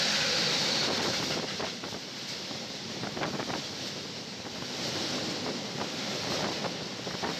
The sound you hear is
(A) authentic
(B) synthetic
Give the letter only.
A